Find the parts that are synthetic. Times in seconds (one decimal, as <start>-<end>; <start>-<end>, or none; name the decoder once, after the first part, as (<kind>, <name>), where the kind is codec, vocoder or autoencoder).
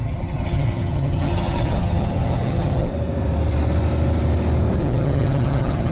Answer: 0.0-2.9 (vocoder, HiFi-GAN); 4.8-5.9